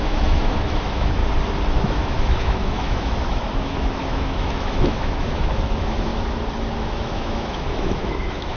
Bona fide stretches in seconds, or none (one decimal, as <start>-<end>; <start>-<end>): 1.2-1.8; 6.1-6.8